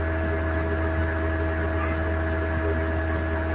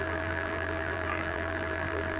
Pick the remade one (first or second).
second